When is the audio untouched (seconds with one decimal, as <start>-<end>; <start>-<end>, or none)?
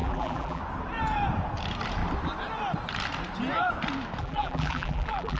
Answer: 0.6-4.2